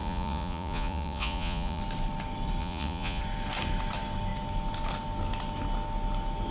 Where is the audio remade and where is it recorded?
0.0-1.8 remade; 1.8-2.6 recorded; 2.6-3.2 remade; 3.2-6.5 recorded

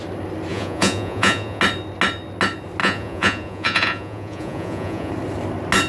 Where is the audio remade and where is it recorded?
0.0-0.5 recorded; 0.5-1.6 remade; 1.6-2.8 recorded; 2.8-5.1 remade; 5.1-5.9 recorded

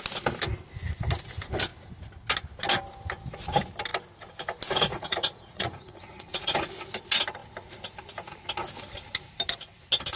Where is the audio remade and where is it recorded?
0.0-4.9 recorded; 4.9-6.7 remade; 6.7-10.2 recorded